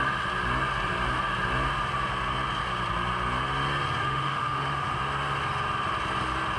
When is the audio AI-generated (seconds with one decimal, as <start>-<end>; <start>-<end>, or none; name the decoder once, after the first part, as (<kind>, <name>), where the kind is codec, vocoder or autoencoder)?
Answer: 4.0-5.0 (autoencoder, DAC-VAE)